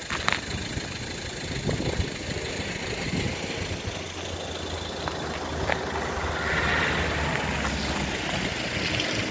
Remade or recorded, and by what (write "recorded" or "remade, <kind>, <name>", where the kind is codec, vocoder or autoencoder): recorded